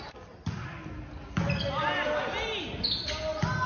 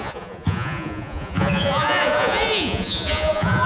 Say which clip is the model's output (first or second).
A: second